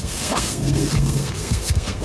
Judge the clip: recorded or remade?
remade